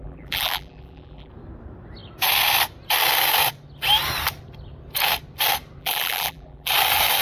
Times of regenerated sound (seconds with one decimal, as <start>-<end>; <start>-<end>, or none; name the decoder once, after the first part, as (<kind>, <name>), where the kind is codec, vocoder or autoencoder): 0.0-1.3 (vocoder, BigVGAN v2); 5.8-6.7